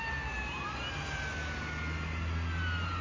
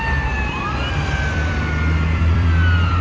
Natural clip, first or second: first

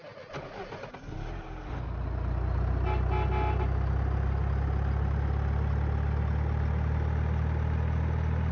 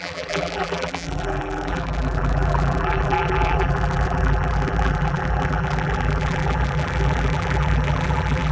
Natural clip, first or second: first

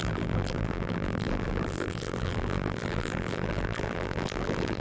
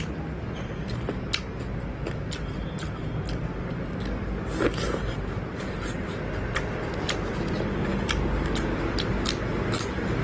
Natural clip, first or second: second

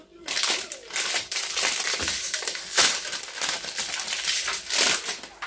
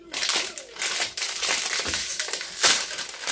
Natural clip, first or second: second